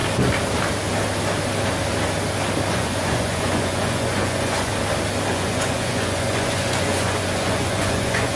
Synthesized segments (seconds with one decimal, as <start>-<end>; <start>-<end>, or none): 2.7-4.7; 5.3-8.4